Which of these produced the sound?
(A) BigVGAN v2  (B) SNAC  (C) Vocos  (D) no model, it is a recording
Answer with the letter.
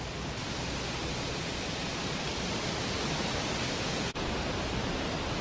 D